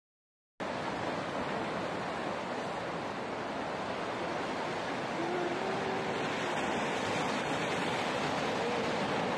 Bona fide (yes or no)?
yes